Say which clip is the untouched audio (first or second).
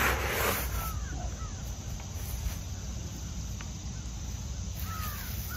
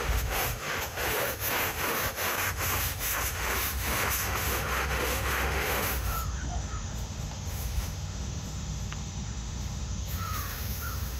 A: first